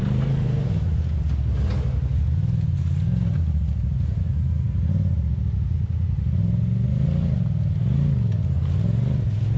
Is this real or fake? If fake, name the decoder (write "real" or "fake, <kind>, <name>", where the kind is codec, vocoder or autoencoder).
real